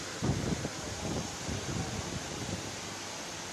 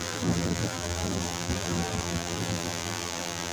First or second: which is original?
first